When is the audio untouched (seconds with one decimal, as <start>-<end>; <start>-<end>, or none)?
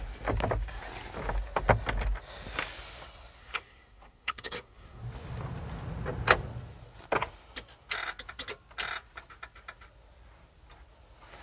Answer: 0.0-3.4; 5.0-11.4